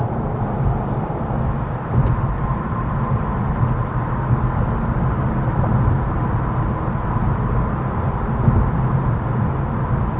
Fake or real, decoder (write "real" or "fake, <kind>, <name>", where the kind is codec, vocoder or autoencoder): real